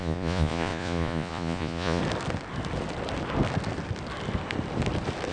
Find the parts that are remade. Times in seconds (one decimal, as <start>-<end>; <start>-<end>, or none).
0.0-2.0